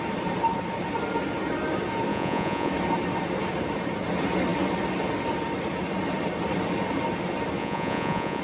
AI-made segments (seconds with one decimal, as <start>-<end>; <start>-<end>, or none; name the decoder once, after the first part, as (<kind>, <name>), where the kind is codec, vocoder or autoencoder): 2.1-2.7 (vocoder, Vocos); 7.6-8.4